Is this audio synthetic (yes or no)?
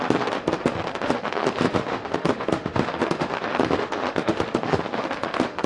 yes